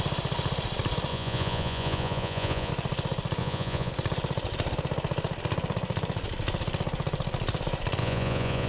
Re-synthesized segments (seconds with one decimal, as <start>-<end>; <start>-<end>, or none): 1.1-2.7; 3.4-3.9; 8.0-8.7